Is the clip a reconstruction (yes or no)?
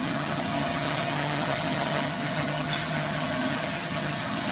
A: yes